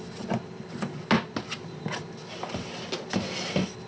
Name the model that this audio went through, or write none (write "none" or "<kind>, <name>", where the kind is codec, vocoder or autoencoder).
none